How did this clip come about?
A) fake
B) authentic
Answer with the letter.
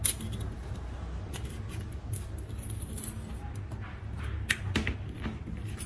B